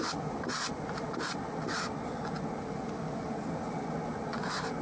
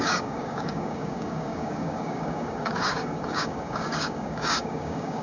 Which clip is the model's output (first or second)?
second